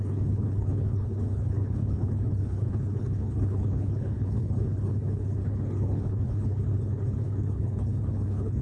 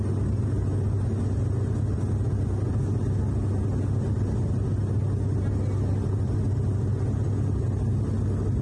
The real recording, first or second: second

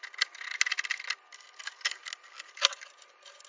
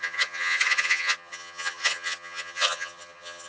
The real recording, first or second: first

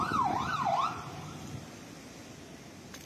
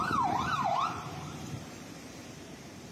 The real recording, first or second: first